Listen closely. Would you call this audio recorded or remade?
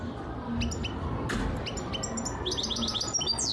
recorded